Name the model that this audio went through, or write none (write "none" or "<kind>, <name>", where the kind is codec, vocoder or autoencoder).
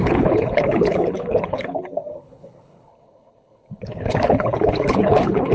codec, HILCodec